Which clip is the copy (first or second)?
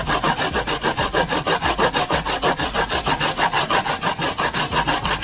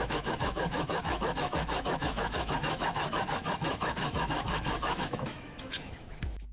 second